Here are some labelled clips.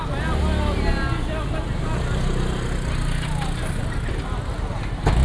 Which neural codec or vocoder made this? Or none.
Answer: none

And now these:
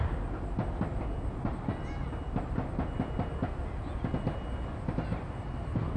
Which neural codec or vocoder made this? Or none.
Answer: none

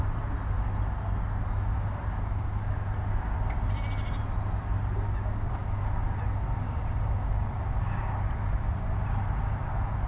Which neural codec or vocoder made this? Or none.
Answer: none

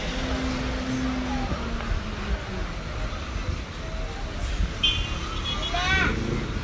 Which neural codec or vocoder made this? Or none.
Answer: none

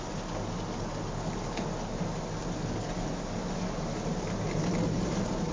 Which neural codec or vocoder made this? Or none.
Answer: none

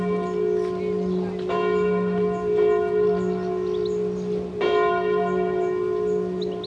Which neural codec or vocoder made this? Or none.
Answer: none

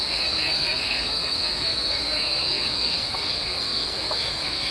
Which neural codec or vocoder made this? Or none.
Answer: codec, SNAC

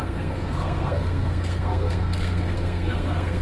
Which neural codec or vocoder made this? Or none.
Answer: codec, SNAC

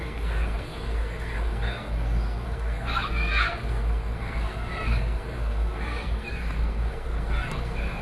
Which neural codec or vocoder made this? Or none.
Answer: codec, SNAC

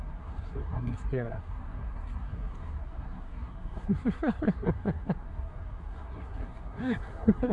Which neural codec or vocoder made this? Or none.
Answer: codec, SNAC